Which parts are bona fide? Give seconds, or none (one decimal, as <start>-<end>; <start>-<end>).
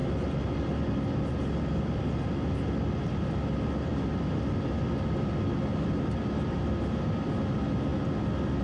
0.0-8.6